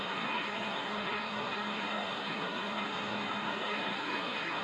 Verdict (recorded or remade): remade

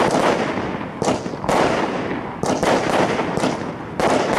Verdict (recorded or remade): recorded